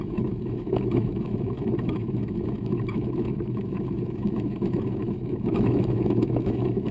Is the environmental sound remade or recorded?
remade